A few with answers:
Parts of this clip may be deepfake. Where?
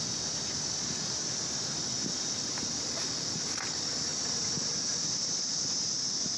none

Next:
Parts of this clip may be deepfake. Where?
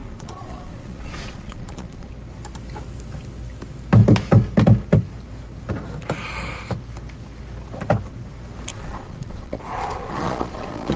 0.0-2.1 (vocoder, Vocos); 8.7-11.0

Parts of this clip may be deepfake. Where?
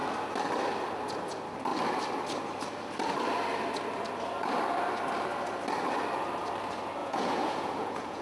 7.0-8.2 (vocoder, Vocos)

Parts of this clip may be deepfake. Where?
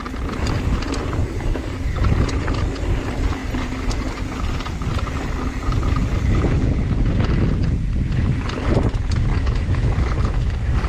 1.2-2.0 (codec, DAC); 9.3-10.9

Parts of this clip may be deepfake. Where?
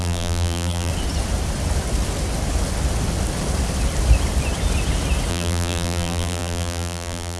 0.0-0.9 (vocoder, BigVGAN v2); 5.3-7.4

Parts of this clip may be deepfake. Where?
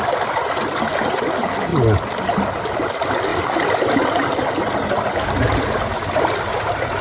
none